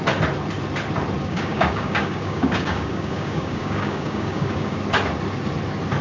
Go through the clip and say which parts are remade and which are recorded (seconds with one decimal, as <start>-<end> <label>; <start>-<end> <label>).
0.0-1.2 recorded; 1.2-4.8 remade; 4.8-6.0 recorded